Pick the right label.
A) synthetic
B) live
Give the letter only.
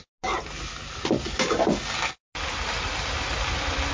B